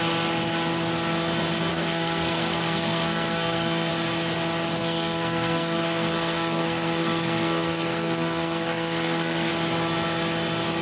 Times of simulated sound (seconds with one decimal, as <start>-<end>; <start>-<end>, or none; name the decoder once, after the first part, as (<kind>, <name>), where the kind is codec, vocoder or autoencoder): 1.7-3.9 (codec, SNAC); 4.8-9.5